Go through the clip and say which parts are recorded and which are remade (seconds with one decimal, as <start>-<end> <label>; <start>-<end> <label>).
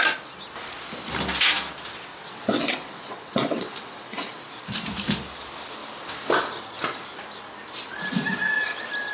0.0-2.1 recorded; 2.1-4.4 remade; 4.4-9.1 recorded